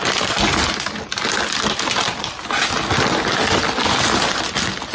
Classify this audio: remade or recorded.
recorded